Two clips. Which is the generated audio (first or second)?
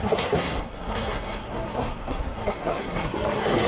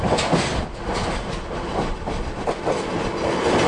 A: first